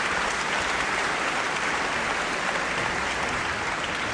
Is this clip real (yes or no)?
no